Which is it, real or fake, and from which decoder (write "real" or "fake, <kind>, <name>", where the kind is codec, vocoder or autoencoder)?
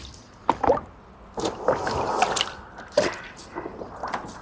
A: real